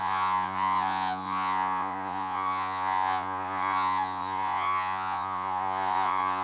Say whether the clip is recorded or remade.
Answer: remade